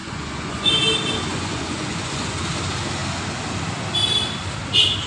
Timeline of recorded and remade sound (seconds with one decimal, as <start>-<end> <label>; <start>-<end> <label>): 0.0-0.7 remade; 0.7-1.3 recorded; 1.3-2.5 remade; 2.5-5.1 recorded